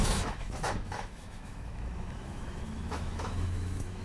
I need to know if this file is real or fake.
fake